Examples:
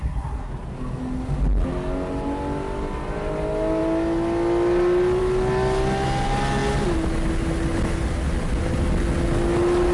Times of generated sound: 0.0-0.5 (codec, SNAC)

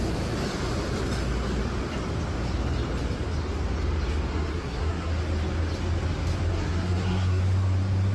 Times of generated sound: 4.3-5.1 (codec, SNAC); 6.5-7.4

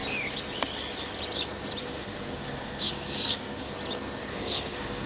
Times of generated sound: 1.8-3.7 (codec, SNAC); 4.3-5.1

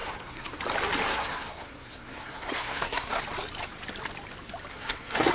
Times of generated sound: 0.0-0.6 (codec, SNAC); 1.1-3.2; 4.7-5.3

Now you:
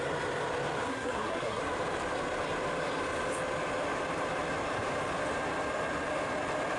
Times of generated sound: 0.9-1.6 (codec, SNAC)